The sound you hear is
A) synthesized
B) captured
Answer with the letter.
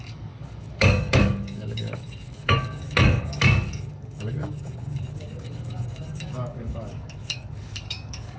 A